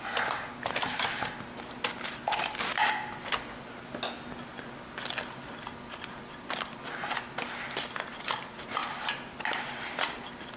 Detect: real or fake real